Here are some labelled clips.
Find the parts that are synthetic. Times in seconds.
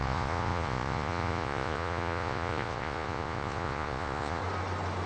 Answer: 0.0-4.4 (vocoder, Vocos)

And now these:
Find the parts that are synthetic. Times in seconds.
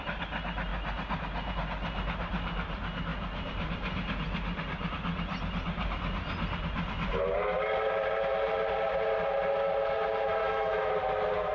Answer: 10.4-10.9 (autoencoder, DAC-VAE)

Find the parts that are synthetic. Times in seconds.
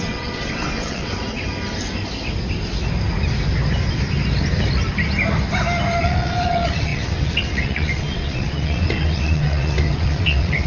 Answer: 0.0-1.1 (vocoder, WaveNeXt); 6.0-10.7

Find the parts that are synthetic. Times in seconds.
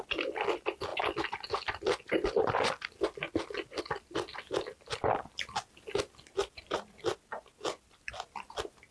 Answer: none